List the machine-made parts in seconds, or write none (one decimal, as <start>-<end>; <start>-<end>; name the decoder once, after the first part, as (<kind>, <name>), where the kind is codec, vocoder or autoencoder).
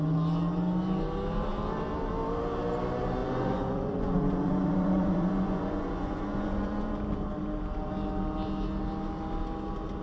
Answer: 3.2-6.9 (vocoder, Vocos)